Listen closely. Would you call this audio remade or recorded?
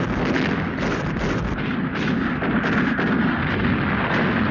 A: recorded